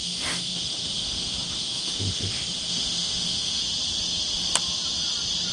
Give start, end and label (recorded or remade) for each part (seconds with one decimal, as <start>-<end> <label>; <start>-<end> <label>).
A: 0.0-3.6 remade; 3.6-5.5 recorded